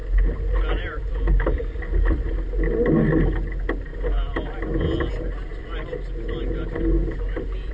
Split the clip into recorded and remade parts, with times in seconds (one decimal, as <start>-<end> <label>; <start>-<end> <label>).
0.0-7.7 recorded